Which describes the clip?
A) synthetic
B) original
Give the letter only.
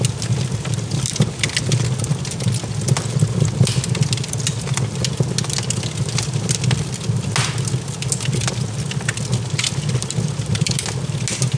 B